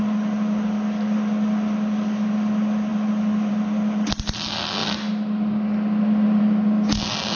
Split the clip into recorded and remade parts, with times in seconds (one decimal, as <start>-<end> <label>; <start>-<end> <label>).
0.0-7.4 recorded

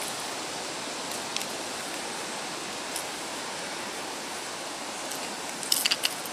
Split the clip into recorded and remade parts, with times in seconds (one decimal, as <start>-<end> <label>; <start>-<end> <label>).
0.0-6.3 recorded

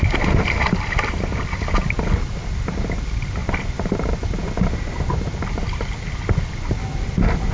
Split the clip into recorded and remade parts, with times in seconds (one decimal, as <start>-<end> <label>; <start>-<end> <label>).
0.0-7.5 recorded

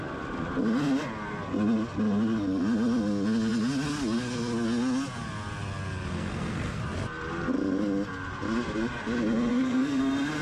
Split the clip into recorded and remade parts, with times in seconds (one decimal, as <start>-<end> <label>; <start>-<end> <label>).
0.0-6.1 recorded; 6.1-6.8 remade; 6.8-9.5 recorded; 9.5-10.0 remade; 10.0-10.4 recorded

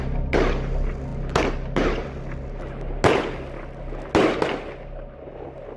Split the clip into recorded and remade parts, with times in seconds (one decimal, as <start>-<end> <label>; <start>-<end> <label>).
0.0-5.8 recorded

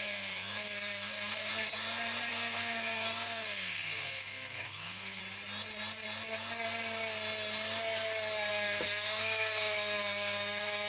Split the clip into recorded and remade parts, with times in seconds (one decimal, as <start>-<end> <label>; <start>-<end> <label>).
0.0-1.5 remade; 1.5-2.3 recorded; 2.3-5.2 remade; 5.2-8.5 recorded; 8.5-10.9 remade